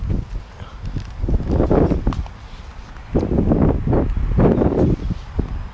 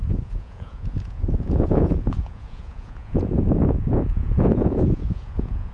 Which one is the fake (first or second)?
second